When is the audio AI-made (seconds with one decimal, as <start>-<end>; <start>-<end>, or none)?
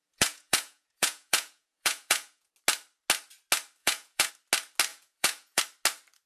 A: 0.0-2.5; 3.8-4.3; 4.9-5.6